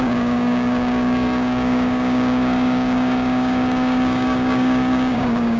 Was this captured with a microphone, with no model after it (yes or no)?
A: no